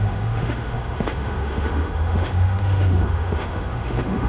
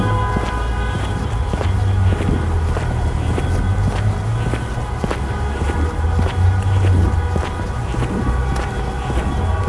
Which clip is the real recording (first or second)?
second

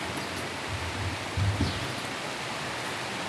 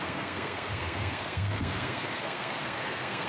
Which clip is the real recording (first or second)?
first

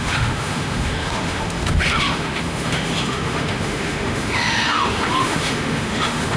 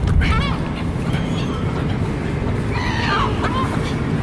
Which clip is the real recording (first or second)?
second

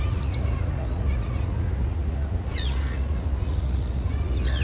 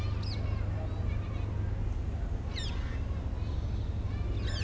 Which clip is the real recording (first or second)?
second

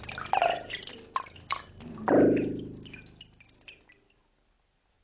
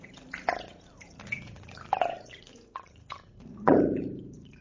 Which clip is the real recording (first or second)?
first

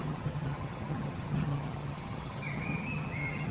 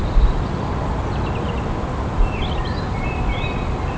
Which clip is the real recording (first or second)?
second